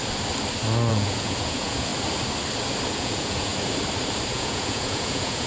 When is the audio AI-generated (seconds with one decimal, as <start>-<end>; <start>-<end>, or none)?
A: 0.9-1.9; 2.9-3.5; 4.3-5.5